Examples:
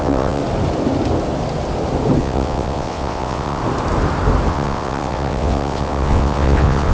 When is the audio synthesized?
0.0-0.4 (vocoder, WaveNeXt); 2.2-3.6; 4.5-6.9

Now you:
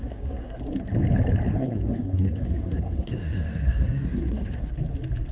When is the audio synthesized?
0.0-0.6 (codec, SNAC); 1.5-4.7

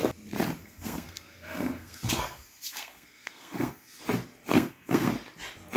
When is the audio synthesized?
0.6-4.0 (codec, SNAC); 4.5-5.1

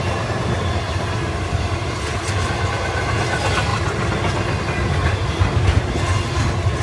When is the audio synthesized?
none

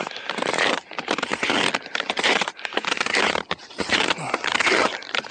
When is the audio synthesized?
0.0-1.3 (vocoder, BigVGAN v2); 3.9-5.3

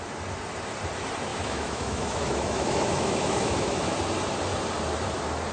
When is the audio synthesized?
1.3-4.0 (autoencoder, DAC-VAE)